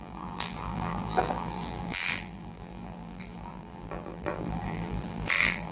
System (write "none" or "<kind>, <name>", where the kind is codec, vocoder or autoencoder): vocoder, BigVGAN v2